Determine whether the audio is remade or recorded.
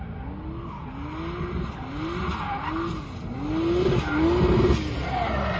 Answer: recorded